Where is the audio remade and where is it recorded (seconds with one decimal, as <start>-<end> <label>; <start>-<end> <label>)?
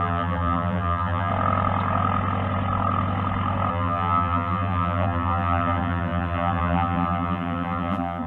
0.0-1.3 remade; 1.3-3.7 recorded; 3.7-8.3 remade